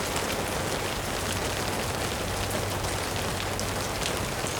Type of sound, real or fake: real